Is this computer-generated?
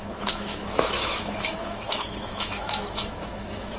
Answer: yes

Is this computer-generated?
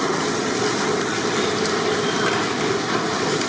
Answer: no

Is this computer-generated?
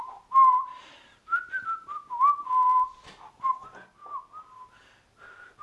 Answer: no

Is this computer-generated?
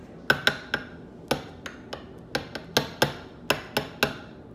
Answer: no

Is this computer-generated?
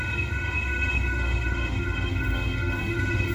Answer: yes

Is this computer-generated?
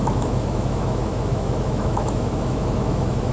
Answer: yes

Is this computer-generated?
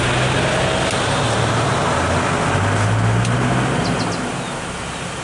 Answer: no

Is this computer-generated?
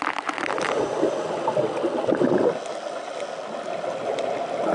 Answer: no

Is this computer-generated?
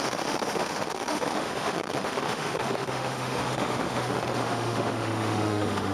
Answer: yes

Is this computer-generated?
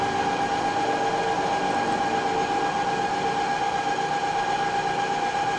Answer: no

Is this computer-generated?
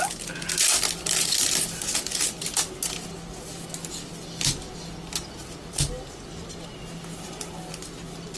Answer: no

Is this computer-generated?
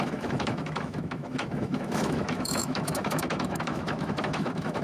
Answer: yes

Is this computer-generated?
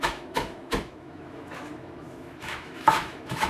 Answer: yes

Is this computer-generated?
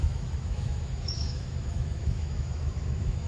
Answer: yes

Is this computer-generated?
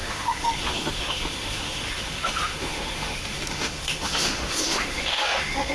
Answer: yes